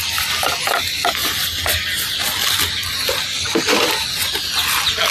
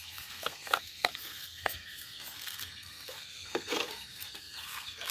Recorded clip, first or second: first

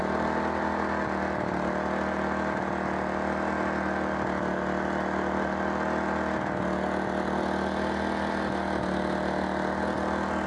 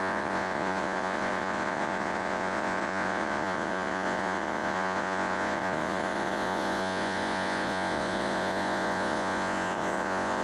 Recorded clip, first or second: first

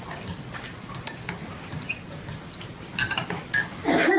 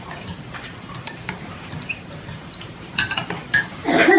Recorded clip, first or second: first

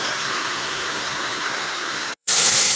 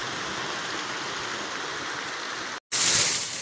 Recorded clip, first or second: second